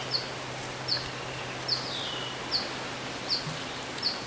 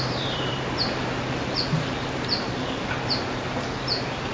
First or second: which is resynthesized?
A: second